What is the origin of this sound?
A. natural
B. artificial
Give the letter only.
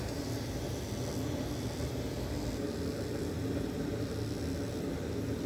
A